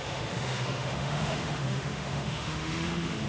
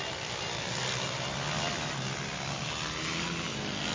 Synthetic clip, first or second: first